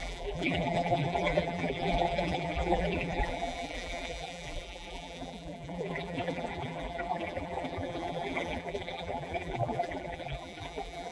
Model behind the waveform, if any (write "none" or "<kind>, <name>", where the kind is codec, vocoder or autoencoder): vocoder, BigVGAN v2